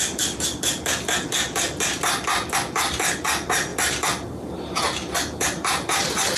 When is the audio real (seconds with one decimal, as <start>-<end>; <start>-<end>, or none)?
0.0-6.4